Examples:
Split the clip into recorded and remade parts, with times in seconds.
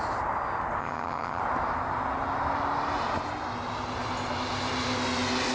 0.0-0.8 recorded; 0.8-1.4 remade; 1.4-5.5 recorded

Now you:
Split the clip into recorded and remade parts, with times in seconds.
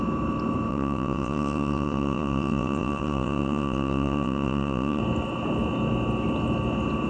0.0-0.7 recorded; 0.7-5.0 remade; 5.0-7.1 recorded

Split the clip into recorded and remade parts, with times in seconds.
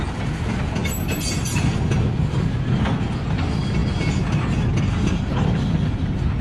0.0-6.4 recorded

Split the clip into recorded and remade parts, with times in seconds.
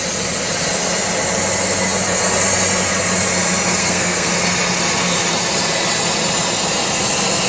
0.0-3.8 recorded; 3.8-4.3 remade; 4.3-7.5 recorded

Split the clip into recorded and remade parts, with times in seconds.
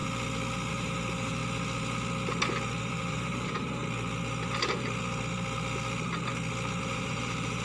0.0-0.7 recorded; 0.7-1.4 remade; 1.4-2.8 recorded; 2.8-3.8 remade; 3.8-6.8 recorded; 6.8-7.6 remade